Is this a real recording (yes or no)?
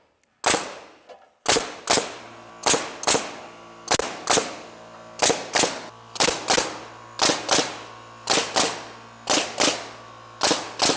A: yes